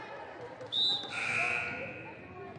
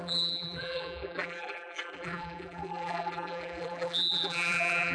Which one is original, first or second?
first